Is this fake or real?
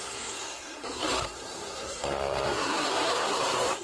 fake